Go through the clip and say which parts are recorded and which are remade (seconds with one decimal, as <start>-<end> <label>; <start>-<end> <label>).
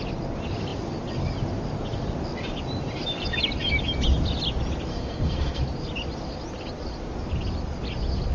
0.0-4.9 recorded; 4.9-5.6 remade; 5.6-8.3 recorded